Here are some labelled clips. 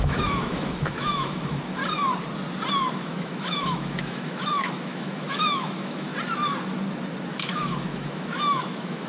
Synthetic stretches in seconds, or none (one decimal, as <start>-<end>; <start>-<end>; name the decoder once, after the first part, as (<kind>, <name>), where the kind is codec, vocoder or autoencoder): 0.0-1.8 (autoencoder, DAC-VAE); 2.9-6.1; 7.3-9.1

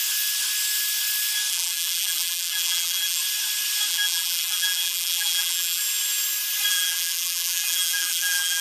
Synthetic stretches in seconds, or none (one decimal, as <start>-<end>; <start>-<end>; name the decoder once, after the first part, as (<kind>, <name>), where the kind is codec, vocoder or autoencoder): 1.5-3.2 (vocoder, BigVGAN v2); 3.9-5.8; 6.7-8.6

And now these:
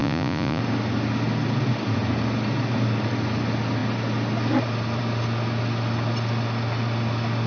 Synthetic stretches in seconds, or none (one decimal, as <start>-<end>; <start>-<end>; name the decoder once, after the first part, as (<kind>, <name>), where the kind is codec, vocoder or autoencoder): 0.0-0.6 (vocoder, Vocos)

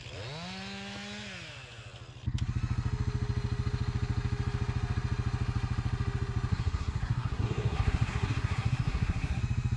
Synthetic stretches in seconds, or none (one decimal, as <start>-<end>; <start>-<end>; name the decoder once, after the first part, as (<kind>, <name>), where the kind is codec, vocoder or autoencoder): 6.5-9.4 (codec, SNAC)

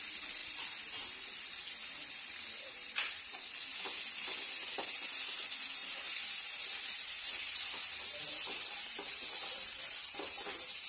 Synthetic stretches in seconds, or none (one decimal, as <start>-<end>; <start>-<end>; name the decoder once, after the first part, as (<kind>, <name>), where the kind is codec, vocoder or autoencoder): 0.4-3.4 (vocoder, BigVGAN v2); 5.8-10.0

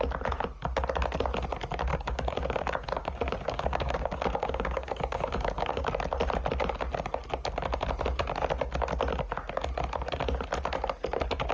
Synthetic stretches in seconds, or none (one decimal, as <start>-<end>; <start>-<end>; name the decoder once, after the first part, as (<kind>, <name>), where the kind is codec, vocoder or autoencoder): 1.9-5.9 (codec, DAC)

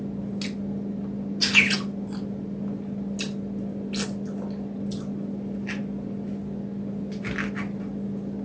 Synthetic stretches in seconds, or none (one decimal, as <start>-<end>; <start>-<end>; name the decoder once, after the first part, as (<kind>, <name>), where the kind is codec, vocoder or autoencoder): none